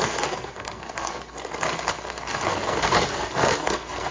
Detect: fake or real fake